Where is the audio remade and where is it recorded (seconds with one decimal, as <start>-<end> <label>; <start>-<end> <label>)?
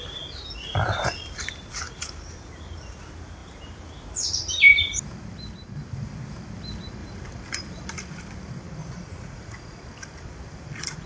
0.0-8.8 recorded; 8.8-9.8 remade; 9.8-11.1 recorded